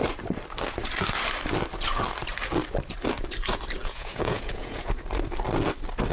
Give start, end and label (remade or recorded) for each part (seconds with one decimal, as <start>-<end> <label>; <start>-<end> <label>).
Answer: 0.0-3.8 recorded; 3.8-4.9 remade; 4.9-6.1 recorded